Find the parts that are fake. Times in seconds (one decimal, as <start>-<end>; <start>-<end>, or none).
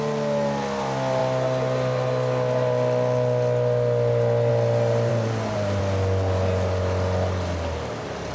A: 5.1-5.8